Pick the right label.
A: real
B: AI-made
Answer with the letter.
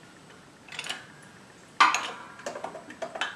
A